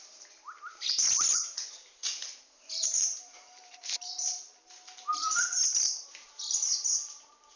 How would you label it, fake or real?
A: fake